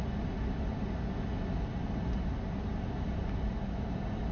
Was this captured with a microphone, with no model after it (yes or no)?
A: yes